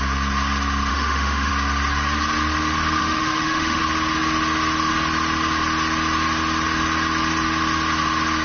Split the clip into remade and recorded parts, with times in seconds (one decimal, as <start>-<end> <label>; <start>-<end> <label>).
0.0-0.9 recorded; 0.9-1.5 remade; 1.5-3.0 recorded; 3.0-3.8 remade; 3.8-8.4 recorded